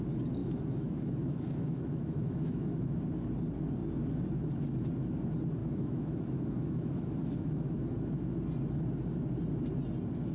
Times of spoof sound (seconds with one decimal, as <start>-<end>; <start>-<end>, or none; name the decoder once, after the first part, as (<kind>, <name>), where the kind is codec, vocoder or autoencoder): 0.4-3.0 (autoencoder, DAC-VAE); 5.6-7.7

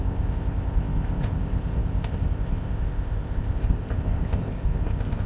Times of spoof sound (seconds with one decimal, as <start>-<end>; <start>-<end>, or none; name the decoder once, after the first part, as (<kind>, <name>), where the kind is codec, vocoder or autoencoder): 0.0-5.3 (codec, ZipCodec)

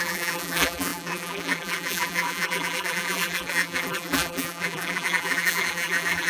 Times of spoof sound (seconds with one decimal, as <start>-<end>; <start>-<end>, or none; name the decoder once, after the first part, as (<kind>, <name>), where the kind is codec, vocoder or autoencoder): 0.0-6.3 (vocoder, BigVGAN v2)

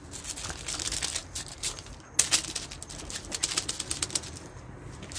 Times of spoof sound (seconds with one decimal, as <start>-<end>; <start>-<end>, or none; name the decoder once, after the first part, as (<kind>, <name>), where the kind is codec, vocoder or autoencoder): none

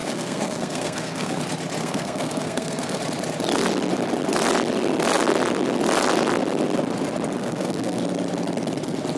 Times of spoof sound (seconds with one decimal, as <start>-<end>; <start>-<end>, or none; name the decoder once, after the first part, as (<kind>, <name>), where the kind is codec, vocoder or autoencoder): 0.0-1.4 (codec, SNAC); 1.8-3.0; 7.4-8.0

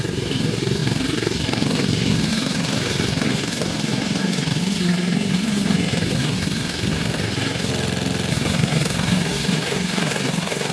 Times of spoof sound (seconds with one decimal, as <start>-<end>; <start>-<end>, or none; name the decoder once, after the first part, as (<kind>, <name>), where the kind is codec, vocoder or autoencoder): 0.0-7.7 (codec, SNAC); 8.3-10.7

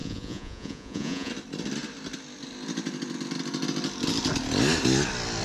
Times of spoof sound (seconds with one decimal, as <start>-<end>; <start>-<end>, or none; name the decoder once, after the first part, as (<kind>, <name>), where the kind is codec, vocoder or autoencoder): 0.0-1.3 (vocoder, Vocos)

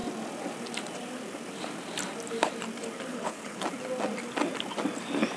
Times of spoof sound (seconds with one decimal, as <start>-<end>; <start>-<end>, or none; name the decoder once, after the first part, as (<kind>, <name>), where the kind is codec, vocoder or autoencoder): 3.1-3.6 (codec, HILCodec)